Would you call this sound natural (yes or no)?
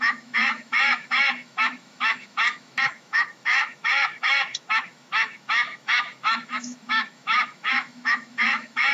no